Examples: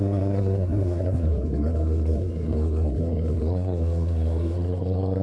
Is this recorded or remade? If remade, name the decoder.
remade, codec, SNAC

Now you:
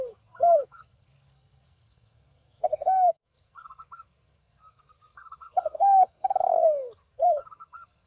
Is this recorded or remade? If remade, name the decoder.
remade, codec, SNAC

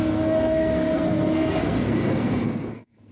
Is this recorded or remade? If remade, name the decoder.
remade, codec, SNAC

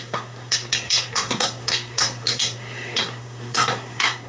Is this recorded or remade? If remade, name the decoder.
remade, codec, SNAC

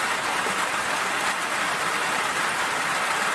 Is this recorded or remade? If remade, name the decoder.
recorded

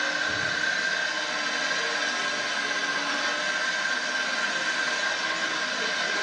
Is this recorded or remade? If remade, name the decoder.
recorded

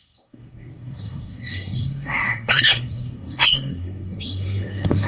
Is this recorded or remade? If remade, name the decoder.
remade, codec, SNAC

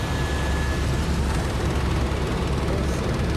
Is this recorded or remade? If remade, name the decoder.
recorded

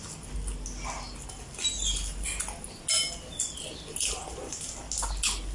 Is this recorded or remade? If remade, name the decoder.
recorded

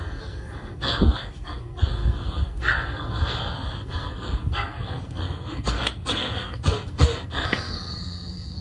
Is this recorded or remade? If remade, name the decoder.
remade, codec, SNAC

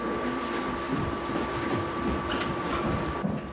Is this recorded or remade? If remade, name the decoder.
recorded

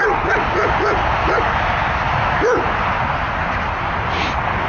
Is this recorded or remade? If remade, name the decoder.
recorded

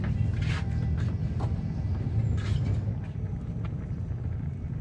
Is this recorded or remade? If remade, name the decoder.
recorded